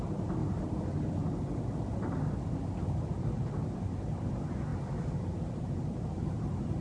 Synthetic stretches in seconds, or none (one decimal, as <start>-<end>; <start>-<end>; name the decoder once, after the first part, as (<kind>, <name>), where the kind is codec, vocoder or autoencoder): none